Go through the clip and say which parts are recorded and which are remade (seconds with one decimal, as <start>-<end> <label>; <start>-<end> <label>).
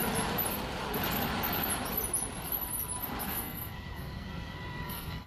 0.0-3.2 recorded; 3.2-5.3 remade